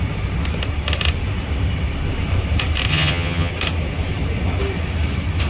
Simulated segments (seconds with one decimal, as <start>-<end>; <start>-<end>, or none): 2.9-3.5